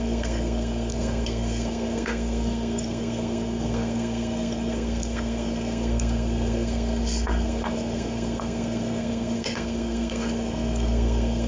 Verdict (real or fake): fake